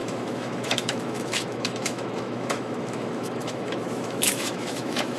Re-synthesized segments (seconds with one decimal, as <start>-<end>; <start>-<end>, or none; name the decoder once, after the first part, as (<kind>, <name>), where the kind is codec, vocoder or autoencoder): 0.0-5.2 (autoencoder, DAC-VAE)